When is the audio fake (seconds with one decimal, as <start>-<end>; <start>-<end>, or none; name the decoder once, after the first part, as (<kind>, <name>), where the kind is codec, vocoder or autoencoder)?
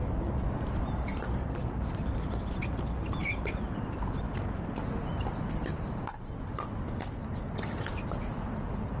1.1-2.4 (vocoder, BigVGAN v2); 5.6-6.8